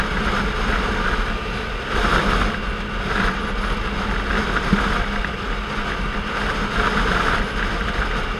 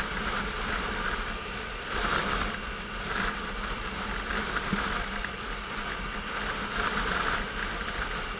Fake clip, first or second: second